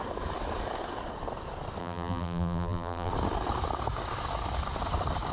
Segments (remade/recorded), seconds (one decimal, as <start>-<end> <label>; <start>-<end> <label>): 0.0-1.8 recorded; 1.8-3.1 remade; 3.1-5.3 recorded